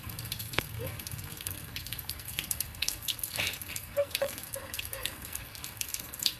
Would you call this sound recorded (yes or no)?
no